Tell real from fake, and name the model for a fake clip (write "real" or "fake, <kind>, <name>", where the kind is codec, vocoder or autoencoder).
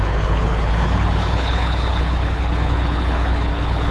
fake, codec, HILCodec